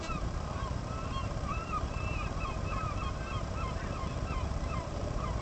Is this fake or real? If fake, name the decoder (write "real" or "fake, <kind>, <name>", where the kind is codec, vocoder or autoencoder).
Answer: fake, vocoder, BigVGAN v2